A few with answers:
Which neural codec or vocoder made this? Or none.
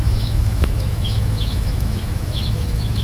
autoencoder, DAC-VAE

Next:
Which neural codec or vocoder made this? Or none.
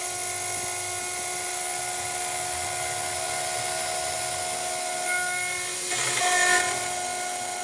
none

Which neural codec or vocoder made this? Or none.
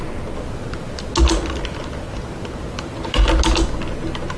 none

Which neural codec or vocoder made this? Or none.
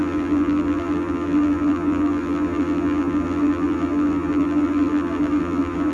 vocoder, BigVGAN v2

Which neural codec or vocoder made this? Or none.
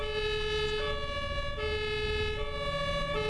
none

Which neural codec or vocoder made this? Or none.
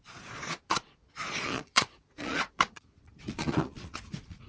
vocoder, Vocos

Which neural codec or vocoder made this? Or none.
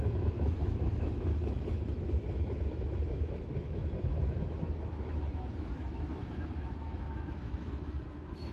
autoencoder, DAC-VAE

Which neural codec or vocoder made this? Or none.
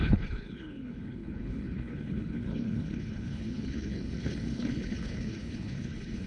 codec, HILCodec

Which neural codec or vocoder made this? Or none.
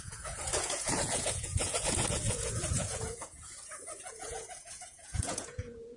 vocoder, Vocos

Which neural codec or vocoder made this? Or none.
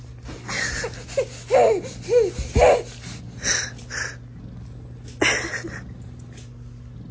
none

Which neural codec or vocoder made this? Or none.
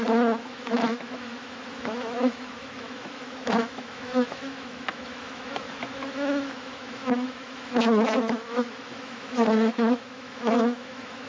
autoencoder, DAC-VAE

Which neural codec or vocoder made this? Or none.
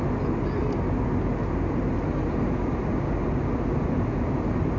none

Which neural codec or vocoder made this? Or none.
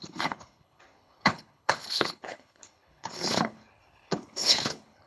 codec, HILCodec